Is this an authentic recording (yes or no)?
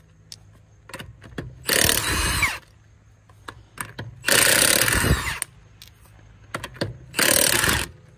yes